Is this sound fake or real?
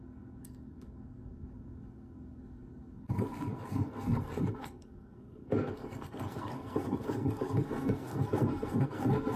fake